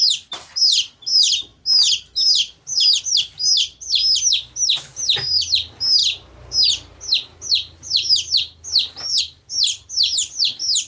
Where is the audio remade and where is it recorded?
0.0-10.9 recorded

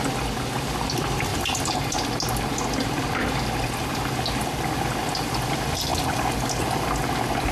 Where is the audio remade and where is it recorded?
0.0-1.3 recorded; 1.3-2.0 remade; 2.0-7.5 recorded

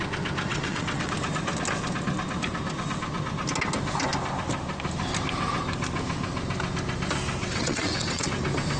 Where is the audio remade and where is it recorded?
0.0-0.5 recorded; 0.5-1.1 remade; 1.1-7.4 recorded; 7.4-8.3 remade; 8.3-8.8 recorded

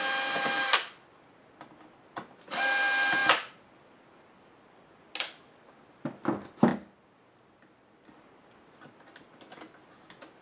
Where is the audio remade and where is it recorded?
0.0-3.2 recorded; 3.2-3.9 remade; 3.9-6.7 recorded; 6.7-8.1 remade; 8.1-10.4 recorded

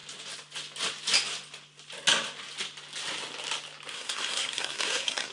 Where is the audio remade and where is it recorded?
0.0-3.9 recorded; 3.9-5.3 remade

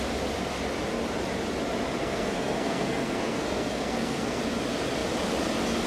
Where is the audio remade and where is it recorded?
0.0-2.0 recorded; 2.0-4.4 remade; 4.4-5.9 recorded

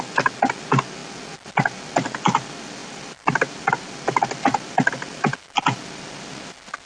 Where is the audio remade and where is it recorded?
0.0-2.8 recorded; 2.8-3.7 remade; 3.7-4.5 recorded; 4.5-5.8 remade; 5.8-6.9 recorded

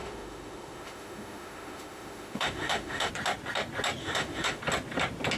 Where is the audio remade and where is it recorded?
0.0-3.1 remade; 3.1-4.0 recorded; 4.0-4.6 remade; 4.6-5.4 recorded